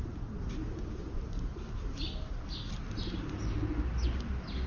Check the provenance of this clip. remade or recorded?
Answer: recorded